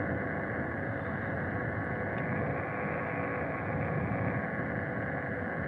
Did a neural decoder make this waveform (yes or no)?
no